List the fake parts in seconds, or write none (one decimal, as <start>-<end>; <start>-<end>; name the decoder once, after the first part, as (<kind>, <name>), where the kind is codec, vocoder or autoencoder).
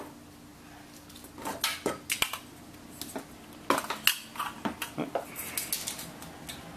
none